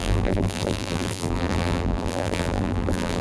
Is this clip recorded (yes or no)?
no